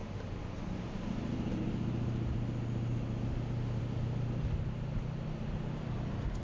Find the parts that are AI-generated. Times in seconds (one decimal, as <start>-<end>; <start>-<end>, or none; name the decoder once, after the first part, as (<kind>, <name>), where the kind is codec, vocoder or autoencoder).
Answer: none